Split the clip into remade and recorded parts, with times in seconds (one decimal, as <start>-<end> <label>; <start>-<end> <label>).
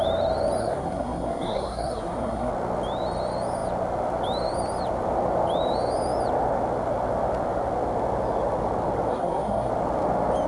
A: 0.0-0.6 recorded; 0.6-2.5 remade; 2.5-9.1 recorded; 9.1-9.7 remade; 9.7-10.5 recorded